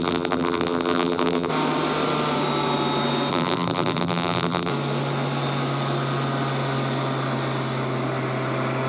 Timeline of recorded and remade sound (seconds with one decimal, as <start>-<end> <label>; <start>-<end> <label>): 0.0-1.5 remade; 1.5-3.3 recorded; 3.3-4.7 remade; 4.7-8.9 recorded